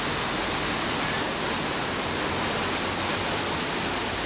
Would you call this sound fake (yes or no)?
no